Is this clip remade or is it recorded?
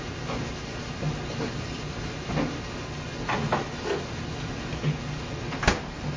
recorded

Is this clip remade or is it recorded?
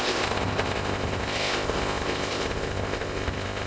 remade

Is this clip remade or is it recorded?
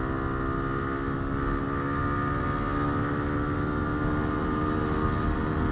recorded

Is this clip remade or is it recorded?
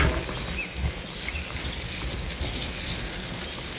recorded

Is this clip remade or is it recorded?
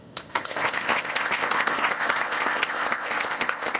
remade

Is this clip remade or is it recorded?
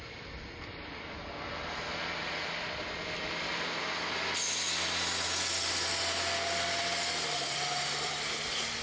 recorded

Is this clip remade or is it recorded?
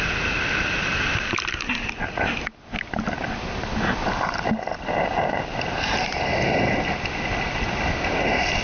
recorded